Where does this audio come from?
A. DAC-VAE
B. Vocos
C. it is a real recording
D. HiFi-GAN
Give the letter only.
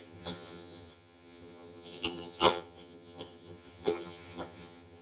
D